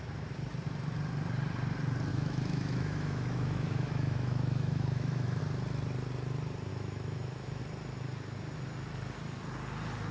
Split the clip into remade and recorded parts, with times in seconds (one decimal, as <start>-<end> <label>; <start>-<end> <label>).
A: 0.0-2.1 recorded; 2.1-5.4 remade; 5.4-6.7 recorded; 6.7-7.6 remade; 7.6-10.1 recorded